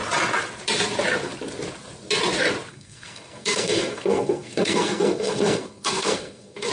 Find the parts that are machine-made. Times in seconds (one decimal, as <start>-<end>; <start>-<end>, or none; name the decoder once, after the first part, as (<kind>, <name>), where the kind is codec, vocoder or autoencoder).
2.7-6.7 (codec, SNAC)